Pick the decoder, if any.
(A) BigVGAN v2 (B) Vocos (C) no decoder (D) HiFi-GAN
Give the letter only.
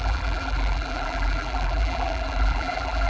A